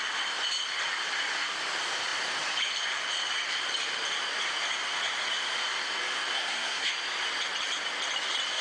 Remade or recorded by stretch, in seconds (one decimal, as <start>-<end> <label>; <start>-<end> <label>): 0.0-6.3 recorded; 6.3-6.9 remade; 6.9-8.6 recorded